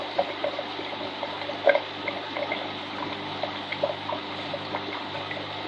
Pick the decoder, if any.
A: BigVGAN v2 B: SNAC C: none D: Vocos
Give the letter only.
C